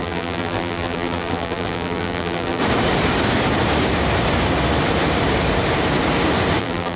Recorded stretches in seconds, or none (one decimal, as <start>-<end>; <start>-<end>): 2.6-6.6